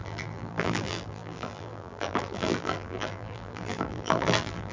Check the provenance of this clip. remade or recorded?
remade